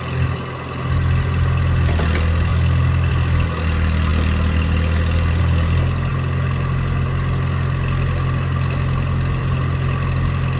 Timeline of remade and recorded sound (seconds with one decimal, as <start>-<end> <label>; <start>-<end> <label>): 0.0-10.6 recorded